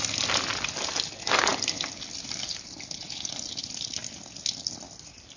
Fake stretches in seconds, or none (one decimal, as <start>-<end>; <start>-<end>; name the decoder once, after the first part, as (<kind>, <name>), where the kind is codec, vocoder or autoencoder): none